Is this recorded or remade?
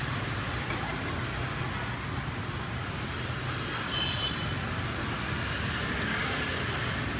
recorded